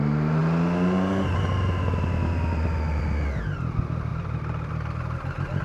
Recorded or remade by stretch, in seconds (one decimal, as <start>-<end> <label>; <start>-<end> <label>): 0.0-4.1 recorded; 4.1-4.7 remade; 4.7-5.6 recorded